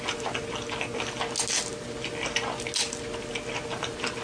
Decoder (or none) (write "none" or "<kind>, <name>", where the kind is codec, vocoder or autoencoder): none